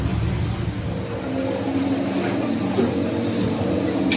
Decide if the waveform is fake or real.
real